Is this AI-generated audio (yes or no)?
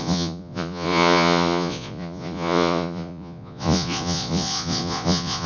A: yes